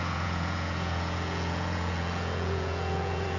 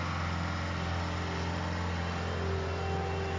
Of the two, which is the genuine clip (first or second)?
second